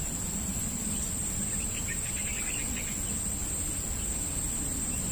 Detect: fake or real real